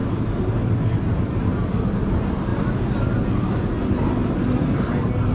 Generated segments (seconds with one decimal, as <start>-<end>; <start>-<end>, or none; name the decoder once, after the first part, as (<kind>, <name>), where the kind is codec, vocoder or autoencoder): none